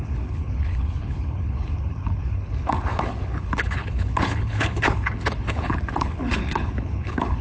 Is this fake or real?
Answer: fake